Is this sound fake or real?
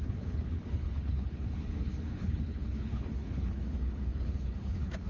fake